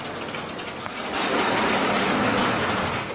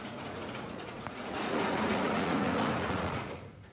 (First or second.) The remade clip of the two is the second